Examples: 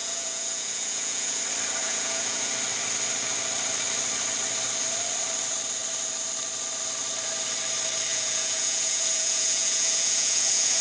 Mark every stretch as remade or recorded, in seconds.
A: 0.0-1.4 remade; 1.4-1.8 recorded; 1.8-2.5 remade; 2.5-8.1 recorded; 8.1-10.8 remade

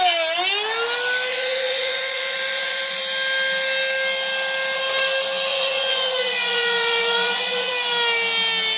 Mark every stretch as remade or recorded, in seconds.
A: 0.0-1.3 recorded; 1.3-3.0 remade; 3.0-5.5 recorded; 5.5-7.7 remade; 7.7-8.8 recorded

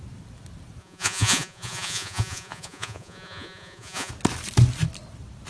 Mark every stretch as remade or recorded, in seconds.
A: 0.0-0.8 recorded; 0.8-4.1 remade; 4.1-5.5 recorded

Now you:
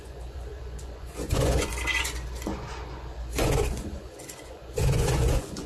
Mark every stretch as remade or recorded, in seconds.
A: 0.0-5.7 remade

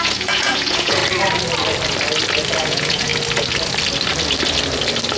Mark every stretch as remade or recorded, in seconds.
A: 0.0-1.0 remade; 1.0-2.6 recorded; 2.6-3.1 remade; 3.1-5.2 recorded

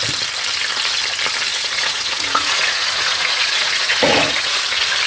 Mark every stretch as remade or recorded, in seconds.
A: 0.0-1.5 recorded; 1.5-4.6 remade; 4.6-5.1 recorded

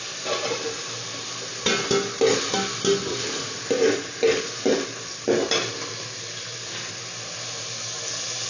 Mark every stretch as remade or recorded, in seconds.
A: 0.0-3.1 recorded; 3.1-3.6 remade; 3.6-8.5 recorded